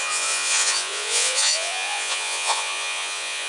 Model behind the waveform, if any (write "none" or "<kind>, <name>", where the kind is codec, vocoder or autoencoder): vocoder, Vocos